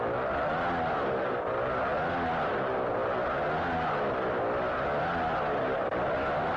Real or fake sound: real